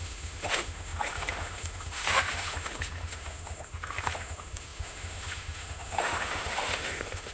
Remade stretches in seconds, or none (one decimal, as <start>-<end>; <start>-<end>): 0.0-7.3